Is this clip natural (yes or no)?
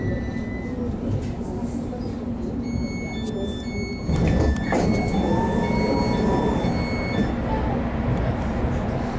yes